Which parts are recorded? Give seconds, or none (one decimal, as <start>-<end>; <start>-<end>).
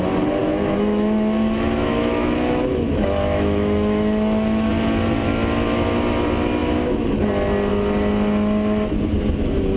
0.0-0.4; 4.7-9.8